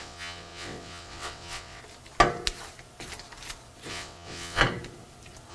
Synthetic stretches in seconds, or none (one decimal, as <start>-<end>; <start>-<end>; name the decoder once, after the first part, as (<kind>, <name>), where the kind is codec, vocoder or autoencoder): 0.0-1.8 (vocoder, WaveNeXt); 3.9-4.6